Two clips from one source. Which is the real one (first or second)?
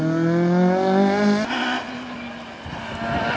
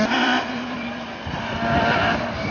first